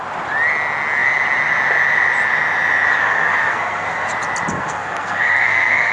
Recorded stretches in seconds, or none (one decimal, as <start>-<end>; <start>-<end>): 0.0-3.0; 4.1-4.5